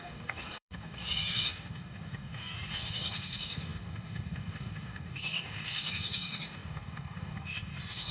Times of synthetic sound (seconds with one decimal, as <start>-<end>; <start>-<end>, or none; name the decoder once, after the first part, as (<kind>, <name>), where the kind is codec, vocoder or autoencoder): 0.0-8.1 (codec, DAC)